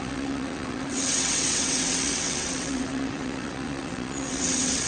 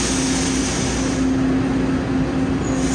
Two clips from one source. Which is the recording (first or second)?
second